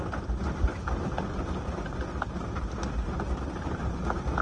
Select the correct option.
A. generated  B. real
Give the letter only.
B